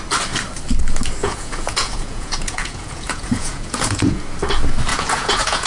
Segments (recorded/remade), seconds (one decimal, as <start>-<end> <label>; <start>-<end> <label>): 0.0-1.2 recorded; 1.2-4.2 remade; 4.2-4.9 recorded; 4.9-5.7 remade